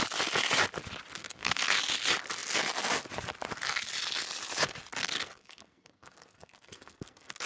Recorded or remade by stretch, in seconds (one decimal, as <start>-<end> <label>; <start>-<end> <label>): 0.0-1.2 recorded; 1.2-1.8 remade; 1.8-5.0 recorded; 5.0-7.5 remade

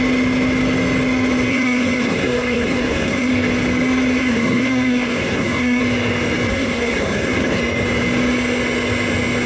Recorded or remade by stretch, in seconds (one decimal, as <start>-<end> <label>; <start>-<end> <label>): 0.0-1.5 recorded; 1.5-3.3 remade; 3.3-4.2 recorded; 4.2-5.8 remade; 5.8-6.5 recorded; 6.5-7.6 remade; 7.6-9.5 recorded

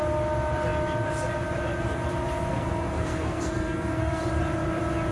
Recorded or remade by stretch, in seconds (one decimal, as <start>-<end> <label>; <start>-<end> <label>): 0.0-2.5 recorded; 2.5-4.2 remade; 4.2-5.1 recorded

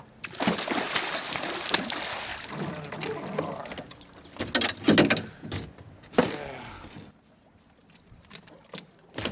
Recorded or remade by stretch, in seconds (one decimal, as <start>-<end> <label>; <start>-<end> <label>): 0.0-9.3 recorded

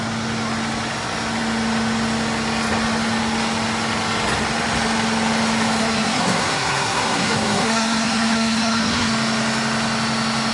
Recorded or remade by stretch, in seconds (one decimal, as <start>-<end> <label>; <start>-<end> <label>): 0.0-5.8 recorded; 5.8-9.1 remade; 9.1-10.5 recorded

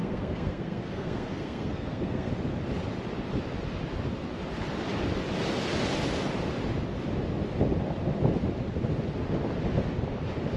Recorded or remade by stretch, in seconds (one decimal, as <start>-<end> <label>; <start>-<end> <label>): 0.0-2.3 remade; 2.3-10.6 recorded

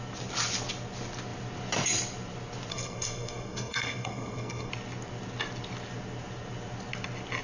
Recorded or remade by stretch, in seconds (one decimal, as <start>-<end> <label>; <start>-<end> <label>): 0.0-2.7 recorded; 2.7-4.7 remade; 4.7-7.4 recorded